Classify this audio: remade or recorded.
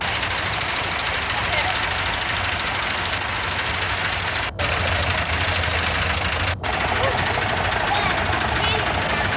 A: recorded